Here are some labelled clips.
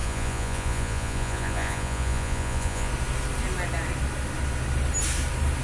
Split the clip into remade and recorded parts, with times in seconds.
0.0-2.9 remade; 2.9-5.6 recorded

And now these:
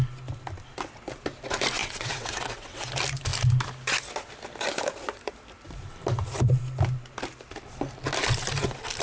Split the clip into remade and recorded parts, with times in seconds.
0.0-1.8 recorded; 1.8-2.9 remade; 2.9-9.0 recorded

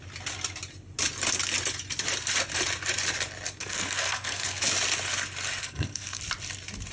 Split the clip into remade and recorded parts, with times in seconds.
0.0-3.6 recorded; 3.6-4.6 remade; 4.6-5.6 recorded; 5.6-6.2 remade; 6.2-6.9 recorded

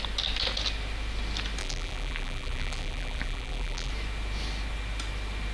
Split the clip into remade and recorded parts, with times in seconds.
0.0-1.6 recorded; 1.6-3.9 remade; 3.9-5.5 recorded

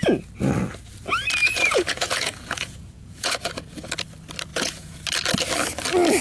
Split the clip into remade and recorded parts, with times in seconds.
0.0-1.4 recorded; 1.4-3.9 remade; 3.9-4.5 recorded; 4.5-5.0 remade; 5.0-6.2 recorded

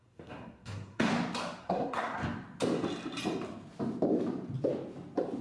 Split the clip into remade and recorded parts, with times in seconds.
0.0-1.1 remade; 1.1-1.6 recorded; 1.6-2.2 remade; 2.2-5.4 recorded

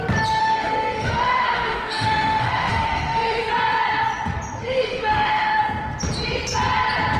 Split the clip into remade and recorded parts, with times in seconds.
0.0-0.4 recorded; 0.4-3.5 remade; 3.5-4.6 recorded; 4.6-5.6 remade; 5.6-7.2 recorded

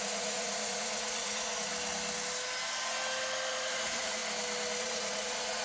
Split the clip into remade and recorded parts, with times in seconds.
0.0-1.7 remade; 1.7-3.5 recorded; 3.5-4.2 remade; 4.2-4.8 recorded; 4.8-5.6 remade